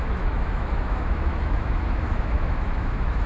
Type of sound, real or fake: fake